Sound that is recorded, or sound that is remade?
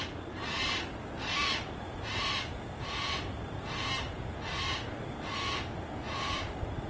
recorded